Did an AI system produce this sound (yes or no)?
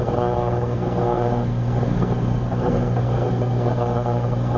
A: yes